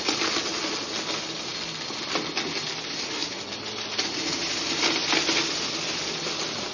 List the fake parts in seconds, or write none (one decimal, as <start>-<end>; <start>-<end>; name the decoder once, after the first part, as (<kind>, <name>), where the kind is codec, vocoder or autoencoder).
none